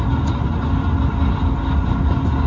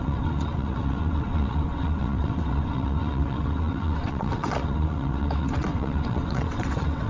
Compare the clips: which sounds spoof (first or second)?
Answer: second